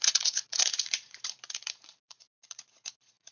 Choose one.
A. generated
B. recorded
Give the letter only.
A